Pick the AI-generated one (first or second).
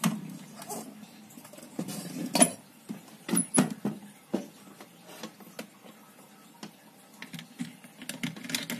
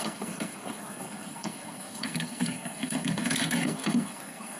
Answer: second